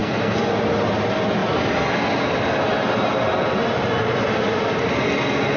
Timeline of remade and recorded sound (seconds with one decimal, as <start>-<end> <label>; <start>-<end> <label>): 0.0-0.5 remade; 0.5-5.6 recorded